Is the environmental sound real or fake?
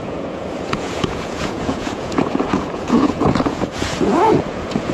fake